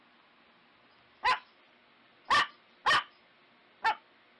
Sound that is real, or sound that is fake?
real